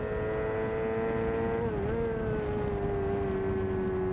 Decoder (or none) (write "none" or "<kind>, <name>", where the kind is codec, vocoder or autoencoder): none